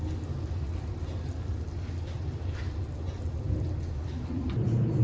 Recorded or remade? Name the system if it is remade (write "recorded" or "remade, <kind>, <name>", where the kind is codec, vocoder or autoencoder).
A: recorded